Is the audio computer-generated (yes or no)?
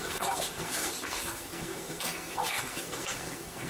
yes